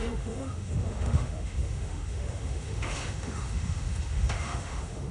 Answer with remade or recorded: remade